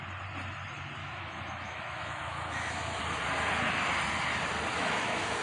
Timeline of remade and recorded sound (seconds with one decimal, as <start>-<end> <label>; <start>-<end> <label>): 0.0-1.0 recorded; 1.0-3.0 remade; 3.0-4.7 recorded; 4.7-5.4 remade